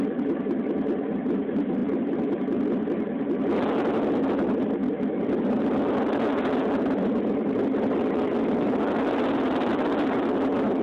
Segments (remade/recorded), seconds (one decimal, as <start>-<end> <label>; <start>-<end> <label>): 0.0-10.8 recorded